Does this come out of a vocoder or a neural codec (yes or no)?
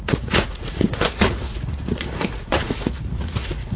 yes